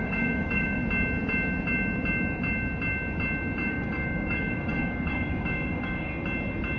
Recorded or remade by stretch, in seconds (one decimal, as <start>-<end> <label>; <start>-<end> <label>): 0.0-0.8 remade; 0.8-3.7 recorded; 3.7-6.1 remade; 6.1-6.8 recorded